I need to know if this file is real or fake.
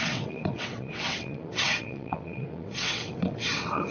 fake